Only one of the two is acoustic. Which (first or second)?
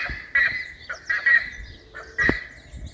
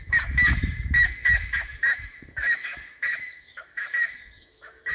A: first